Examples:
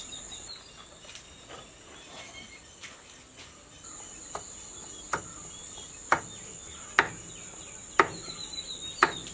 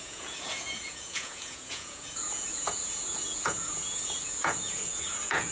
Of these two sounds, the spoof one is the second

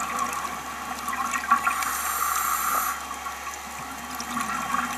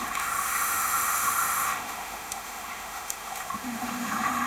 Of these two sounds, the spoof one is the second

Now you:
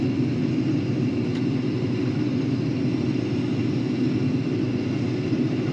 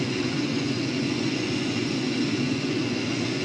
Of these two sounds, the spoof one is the second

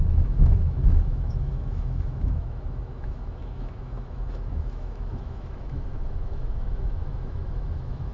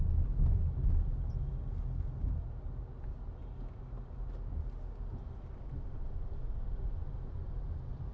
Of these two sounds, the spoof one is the first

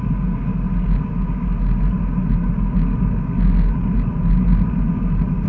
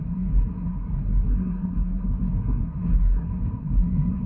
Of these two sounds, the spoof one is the second